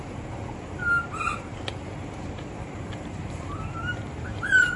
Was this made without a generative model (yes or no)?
no